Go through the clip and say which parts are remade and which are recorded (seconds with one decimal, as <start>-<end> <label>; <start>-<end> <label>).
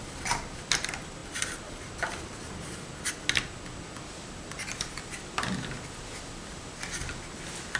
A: 0.0-7.8 recorded